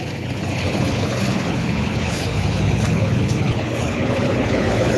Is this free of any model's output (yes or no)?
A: no